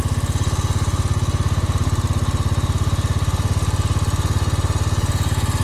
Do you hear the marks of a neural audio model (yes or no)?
no